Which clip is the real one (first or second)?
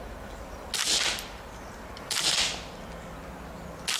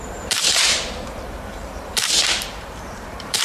first